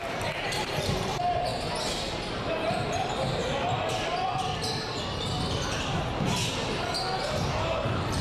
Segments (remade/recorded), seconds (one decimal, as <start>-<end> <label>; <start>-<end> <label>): 0.0-1.5 remade; 1.5-2.4 recorded; 2.4-3.4 remade; 3.4-7.4 recorded; 7.4-8.2 remade